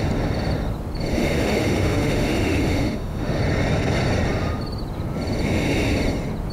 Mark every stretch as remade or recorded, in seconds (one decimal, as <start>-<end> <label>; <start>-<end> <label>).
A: 0.0-1.1 recorded; 1.1-3.4 remade; 3.4-6.5 recorded

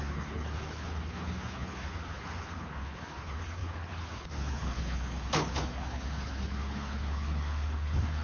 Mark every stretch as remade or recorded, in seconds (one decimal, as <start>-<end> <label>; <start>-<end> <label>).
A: 0.0-8.2 remade